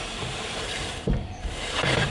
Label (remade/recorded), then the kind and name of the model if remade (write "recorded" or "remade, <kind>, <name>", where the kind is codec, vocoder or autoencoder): remade, vocoder, BigVGAN v2